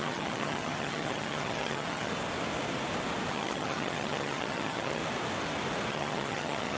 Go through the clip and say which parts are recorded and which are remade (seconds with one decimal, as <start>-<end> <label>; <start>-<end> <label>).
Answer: 0.0-2.1 remade; 2.1-3.3 recorded; 3.3-5.0 remade; 5.0-5.9 recorded; 5.9-6.8 remade